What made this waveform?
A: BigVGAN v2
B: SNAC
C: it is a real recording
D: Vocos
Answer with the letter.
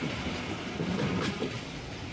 C